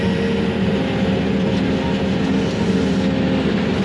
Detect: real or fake real